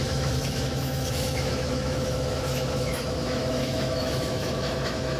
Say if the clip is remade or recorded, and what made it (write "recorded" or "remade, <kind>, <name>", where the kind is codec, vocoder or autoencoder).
remade, autoencoder, DAC-VAE